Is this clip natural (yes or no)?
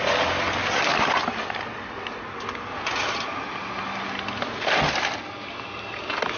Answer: yes